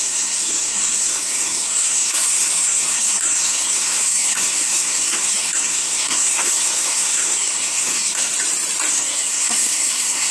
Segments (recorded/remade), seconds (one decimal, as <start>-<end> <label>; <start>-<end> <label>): 0.0-8.3 remade; 8.3-8.9 recorded; 8.9-10.3 remade

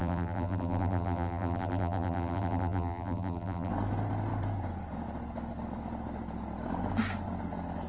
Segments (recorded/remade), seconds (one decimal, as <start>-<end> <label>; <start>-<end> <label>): 0.0-3.7 remade; 3.7-7.9 recorded

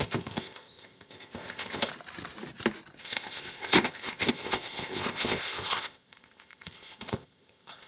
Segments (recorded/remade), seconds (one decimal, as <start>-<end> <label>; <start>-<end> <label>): 0.0-1.9 remade; 1.9-3.0 recorded; 3.0-7.9 remade

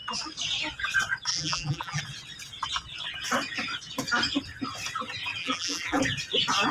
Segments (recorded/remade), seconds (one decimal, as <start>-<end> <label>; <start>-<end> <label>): 0.0-1.3 recorded; 1.3-2.0 remade; 2.0-5.4 recorded; 5.4-6.0 remade; 6.0-6.7 recorded

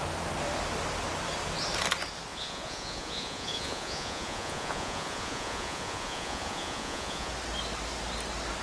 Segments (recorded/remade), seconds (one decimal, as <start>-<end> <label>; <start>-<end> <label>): 0.0-2.3 recorded; 2.3-7.3 remade; 7.3-8.6 recorded

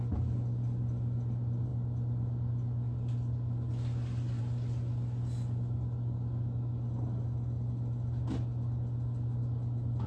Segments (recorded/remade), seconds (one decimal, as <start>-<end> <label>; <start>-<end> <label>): 0.0-10.1 recorded